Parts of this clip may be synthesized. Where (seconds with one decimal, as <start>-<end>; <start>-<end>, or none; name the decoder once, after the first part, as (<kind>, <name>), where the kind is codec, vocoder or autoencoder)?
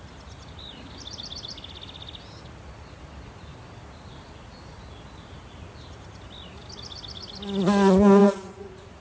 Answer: 8.2-9.0 (vocoder, Vocos)